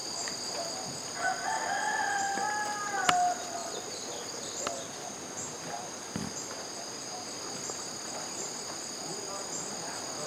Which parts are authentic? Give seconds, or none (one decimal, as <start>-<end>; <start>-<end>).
0.7-3.6; 4.4-10.3